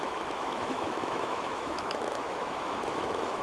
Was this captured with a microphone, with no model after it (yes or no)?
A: no